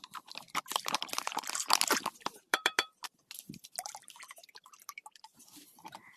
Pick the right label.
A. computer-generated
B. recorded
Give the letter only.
A